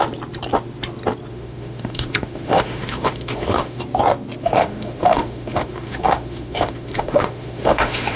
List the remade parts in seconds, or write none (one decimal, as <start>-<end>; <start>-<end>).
1.3-3.8; 4.4-8.2